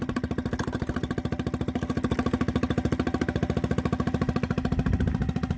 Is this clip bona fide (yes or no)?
yes